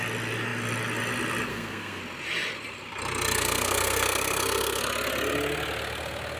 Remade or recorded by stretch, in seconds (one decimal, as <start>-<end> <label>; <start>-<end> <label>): 0.0-1.5 recorded; 1.5-2.0 remade; 2.0-3.4 recorded; 3.4-4.8 remade; 4.8-6.4 recorded

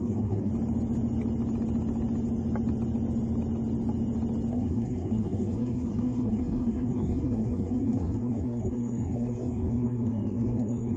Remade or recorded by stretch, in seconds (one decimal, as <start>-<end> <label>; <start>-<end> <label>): 0.0-0.5 remade; 0.5-4.5 recorded; 4.5-11.0 remade

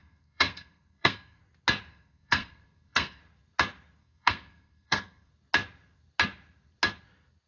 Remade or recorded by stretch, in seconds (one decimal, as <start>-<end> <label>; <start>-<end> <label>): 0.0-1.4 remade; 1.4-1.9 recorded; 1.9-3.2 remade; 3.2-4.0 recorded; 4.0-5.3 remade; 5.3-7.5 recorded